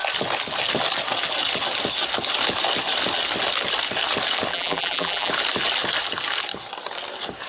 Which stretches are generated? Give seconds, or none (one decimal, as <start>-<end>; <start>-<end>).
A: 4.5-5.3